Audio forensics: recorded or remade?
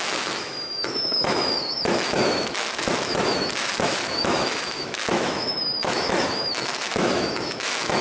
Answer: remade